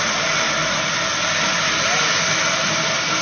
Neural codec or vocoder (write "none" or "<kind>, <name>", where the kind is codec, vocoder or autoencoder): none